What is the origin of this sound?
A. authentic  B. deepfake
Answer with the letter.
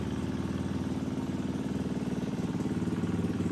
A